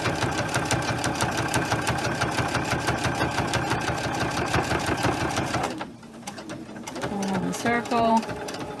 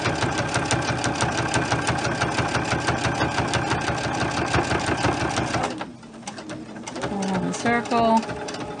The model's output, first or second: first